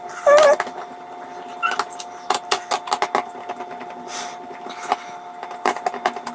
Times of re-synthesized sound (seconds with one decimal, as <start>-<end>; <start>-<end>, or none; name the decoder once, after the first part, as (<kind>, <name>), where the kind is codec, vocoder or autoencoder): none